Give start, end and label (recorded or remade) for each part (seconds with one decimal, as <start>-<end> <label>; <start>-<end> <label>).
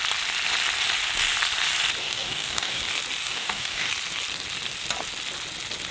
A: 0.0-2.0 recorded; 2.0-2.8 remade; 2.8-3.2 recorded; 3.2-3.9 remade; 3.9-5.9 recorded